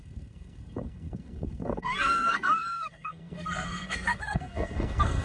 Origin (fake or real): fake